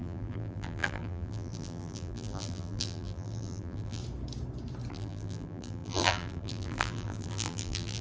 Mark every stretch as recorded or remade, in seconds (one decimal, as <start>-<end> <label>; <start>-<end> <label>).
0.0-4.0 remade; 4.0-4.9 recorded; 4.9-8.0 remade